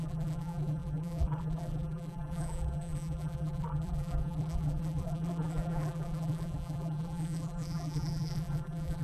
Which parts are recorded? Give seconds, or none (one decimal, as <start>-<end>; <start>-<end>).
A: none